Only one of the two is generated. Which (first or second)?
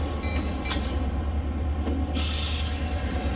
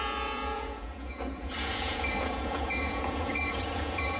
second